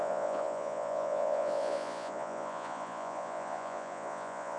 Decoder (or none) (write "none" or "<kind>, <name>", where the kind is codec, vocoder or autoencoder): vocoder, Vocos